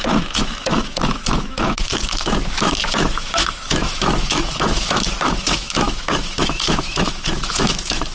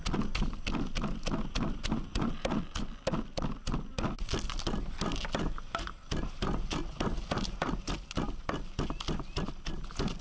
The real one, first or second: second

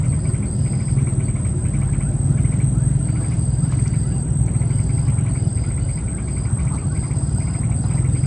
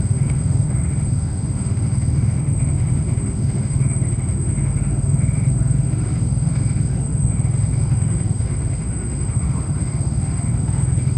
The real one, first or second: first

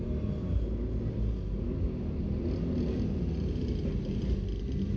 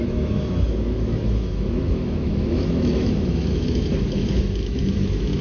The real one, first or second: first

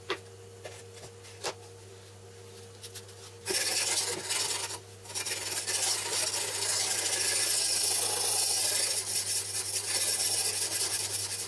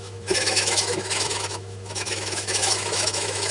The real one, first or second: first